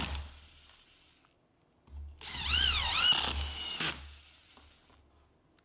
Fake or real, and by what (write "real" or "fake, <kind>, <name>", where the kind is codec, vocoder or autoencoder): real